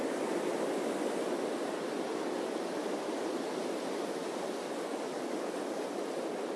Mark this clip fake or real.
real